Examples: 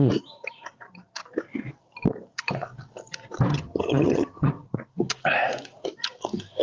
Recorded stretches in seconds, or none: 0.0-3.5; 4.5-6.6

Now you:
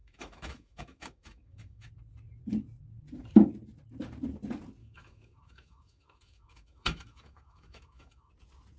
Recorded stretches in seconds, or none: 1.9-4.8; 8.3-8.8

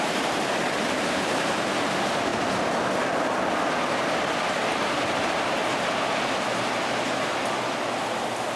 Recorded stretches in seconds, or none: 2.3-4.5; 5.6-8.6

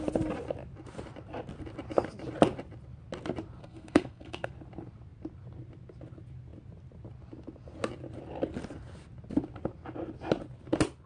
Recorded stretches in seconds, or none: 0.0-3.6; 4.5-11.1

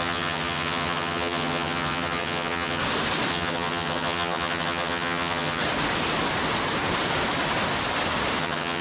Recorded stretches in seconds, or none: 2.8-3.3; 5.6-8.4